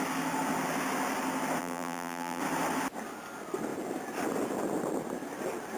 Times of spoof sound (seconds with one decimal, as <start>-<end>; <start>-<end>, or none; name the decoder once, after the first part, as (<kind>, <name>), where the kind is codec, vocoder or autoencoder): 1.6-2.4 (vocoder, BigVGAN v2)